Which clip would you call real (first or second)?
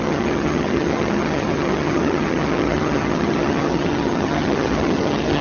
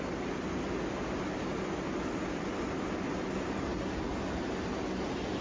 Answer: second